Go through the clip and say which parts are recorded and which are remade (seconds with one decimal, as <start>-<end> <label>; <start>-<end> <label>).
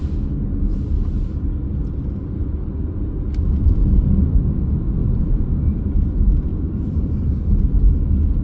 0.0-5.0 recorded; 5.0-5.8 remade; 5.8-6.5 recorded; 6.5-7.6 remade; 7.6-8.4 recorded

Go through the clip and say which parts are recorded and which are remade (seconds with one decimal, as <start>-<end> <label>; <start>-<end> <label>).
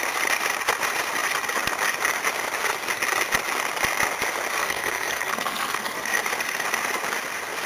0.0-4.6 recorded; 4.6-6.1 remade; 6.1-7.7 recorded